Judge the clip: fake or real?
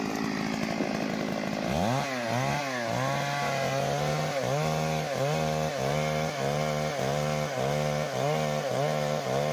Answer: real